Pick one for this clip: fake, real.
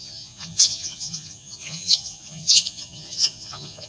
fake